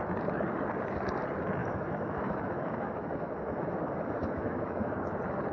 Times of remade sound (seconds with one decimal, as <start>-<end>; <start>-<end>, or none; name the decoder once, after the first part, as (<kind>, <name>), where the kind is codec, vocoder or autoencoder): 1.6-4.9 (autoencoder, DAC-VAE)